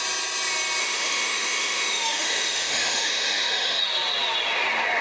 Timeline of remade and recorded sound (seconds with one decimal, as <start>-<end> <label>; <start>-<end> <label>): 0.0-0.8 recorded; 0.8-3.8 remade; 3.8-5.0 recorded